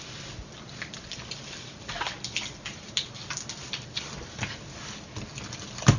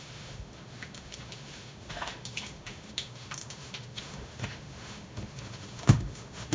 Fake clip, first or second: second